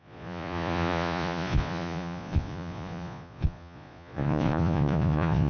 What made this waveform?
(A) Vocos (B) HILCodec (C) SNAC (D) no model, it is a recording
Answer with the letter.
A